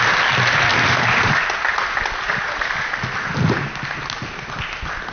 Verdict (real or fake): real